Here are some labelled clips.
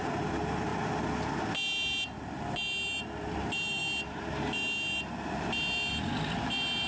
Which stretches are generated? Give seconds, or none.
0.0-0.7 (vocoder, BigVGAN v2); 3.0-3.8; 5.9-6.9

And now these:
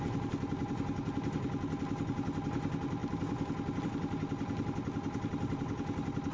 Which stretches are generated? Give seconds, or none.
none

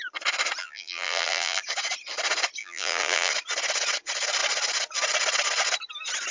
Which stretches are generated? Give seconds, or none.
0.6-1.6 (vocoder, BigVGAN v2); 2.6-3.3

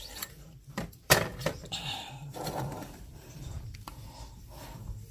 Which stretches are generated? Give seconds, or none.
0.0-5.1 (vocoder, BigVGAN v2)

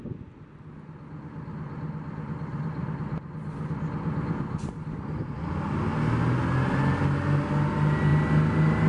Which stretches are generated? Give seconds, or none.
2.5-5.4 (vocoder, BigVGAN v2)

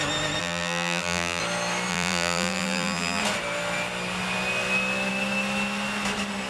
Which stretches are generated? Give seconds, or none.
0.4-1.4 (vocoder, BigVGAN v2); 1.9-3.2